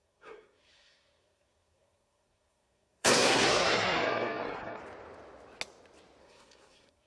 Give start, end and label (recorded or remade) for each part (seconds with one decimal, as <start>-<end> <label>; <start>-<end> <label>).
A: 0.0-4.8 remade; 4.8-6.2 recorded; 6.2-7.1 remade